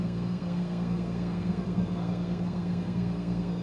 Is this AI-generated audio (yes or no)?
yes